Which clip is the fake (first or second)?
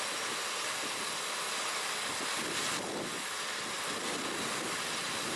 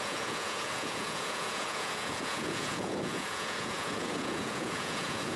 second